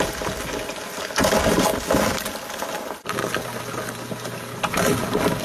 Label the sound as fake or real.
real